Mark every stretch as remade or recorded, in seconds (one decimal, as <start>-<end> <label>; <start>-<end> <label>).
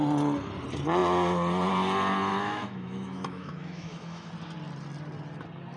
0.0-2.3 recorded; 2.3-4.3 remade; 4.3-5.8 recorded